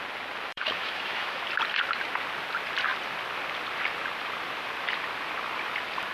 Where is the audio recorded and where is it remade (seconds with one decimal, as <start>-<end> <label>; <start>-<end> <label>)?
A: 0.0-0.5 recorded; 0.5-1.4 remade; 1.4-6.1 recorded